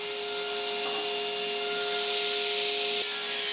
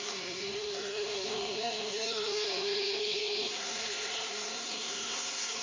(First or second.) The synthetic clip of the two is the second